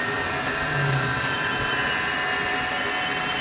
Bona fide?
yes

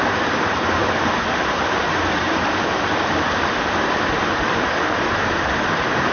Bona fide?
no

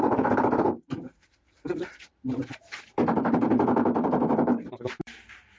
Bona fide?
no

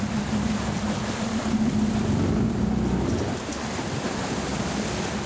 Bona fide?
yes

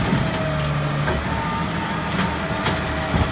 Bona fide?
yes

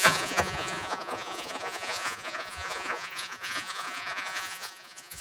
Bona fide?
no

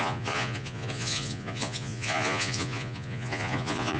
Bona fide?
no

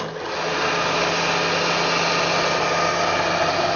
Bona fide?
yes